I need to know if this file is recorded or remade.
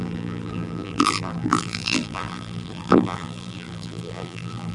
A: remade